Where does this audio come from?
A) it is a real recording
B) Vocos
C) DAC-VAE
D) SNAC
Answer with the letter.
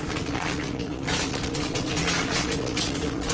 B